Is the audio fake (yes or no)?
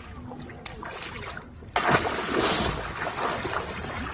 no